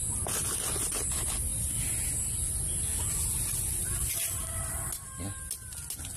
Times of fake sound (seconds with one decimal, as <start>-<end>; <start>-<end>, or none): none